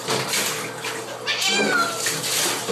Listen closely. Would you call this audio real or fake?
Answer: real